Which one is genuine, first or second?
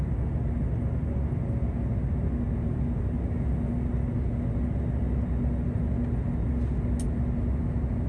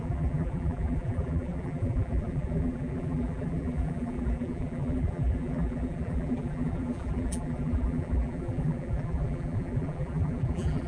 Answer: first